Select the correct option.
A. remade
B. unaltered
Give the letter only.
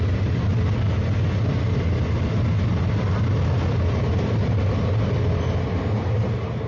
B